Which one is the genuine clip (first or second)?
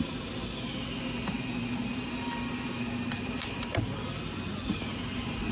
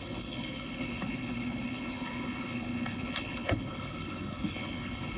first